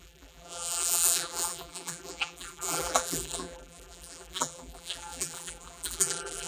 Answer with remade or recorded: remade